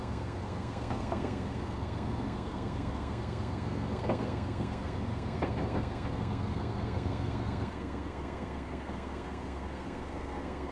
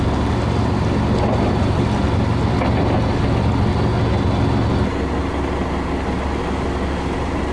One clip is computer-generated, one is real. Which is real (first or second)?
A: second